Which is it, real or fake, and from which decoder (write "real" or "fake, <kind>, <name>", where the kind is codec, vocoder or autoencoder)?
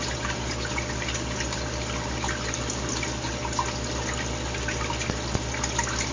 real